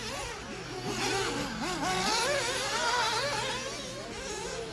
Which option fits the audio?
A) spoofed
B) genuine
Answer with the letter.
B